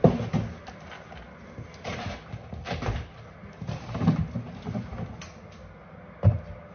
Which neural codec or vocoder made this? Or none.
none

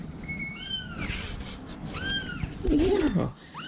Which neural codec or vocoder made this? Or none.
none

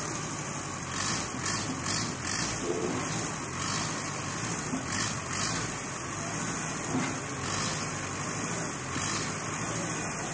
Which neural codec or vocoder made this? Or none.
none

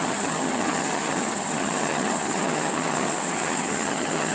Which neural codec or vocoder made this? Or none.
vocoder, HiFi-GAN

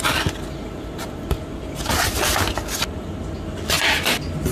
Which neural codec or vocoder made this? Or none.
none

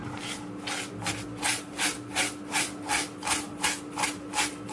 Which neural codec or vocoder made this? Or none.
none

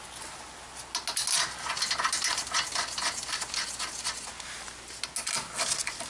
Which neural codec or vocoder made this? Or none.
none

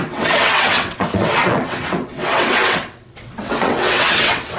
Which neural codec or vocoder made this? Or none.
vocoder, WaveNeXt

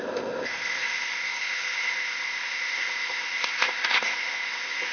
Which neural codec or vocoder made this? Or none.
codec, ZipCodec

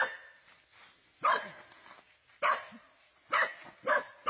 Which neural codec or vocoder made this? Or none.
none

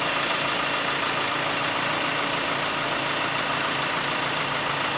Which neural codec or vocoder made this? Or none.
none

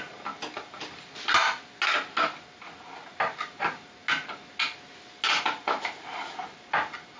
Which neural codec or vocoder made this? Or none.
none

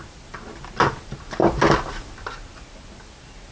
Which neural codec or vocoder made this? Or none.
none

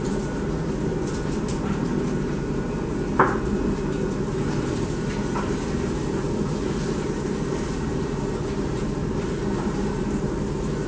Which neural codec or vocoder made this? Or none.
vocoder, BigVGAN v2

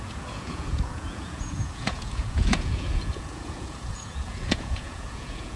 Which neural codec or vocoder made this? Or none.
vocoder, Vocos